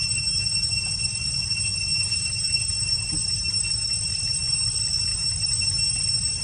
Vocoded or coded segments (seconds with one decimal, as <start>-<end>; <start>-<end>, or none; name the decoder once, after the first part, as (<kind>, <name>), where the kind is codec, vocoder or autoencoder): 0.0-0.9 (vocoder, BigVGAN v2); 1.9-4.1; 5.1-5.9